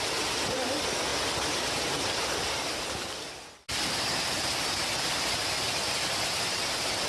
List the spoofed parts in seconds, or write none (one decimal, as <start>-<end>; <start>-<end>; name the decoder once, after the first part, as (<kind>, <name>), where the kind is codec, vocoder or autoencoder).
none